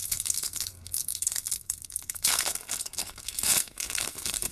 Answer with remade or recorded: remade